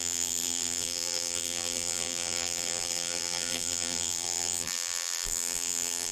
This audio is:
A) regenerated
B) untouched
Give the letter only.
A